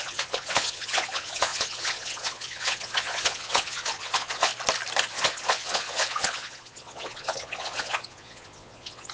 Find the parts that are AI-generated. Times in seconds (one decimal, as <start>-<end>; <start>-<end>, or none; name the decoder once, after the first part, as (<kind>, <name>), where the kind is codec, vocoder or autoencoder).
0.0-4.5 (vocoder, Vocos); 5.1-9.1